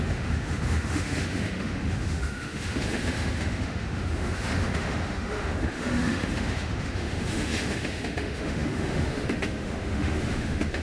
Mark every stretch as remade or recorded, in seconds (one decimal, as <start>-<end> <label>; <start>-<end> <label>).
0.0-10.8 remade